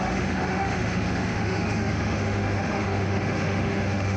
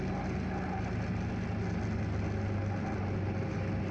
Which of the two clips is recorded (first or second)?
second